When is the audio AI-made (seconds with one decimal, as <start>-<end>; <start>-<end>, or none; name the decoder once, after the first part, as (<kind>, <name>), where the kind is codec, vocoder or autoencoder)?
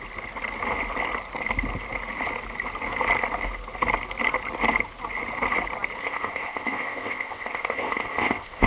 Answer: 6.0-8.7 (codec, ZipCodec)